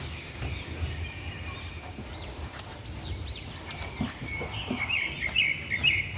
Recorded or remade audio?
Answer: remade